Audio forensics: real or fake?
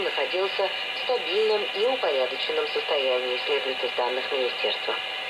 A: real